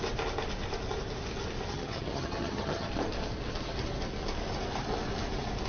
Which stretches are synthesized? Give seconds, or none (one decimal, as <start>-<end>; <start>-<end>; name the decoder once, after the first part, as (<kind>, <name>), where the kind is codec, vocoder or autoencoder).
1.7-2.9 (vocoder, HiFi-GAN)